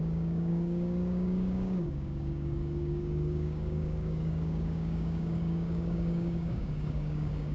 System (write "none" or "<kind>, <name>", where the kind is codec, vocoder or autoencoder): codec, DAC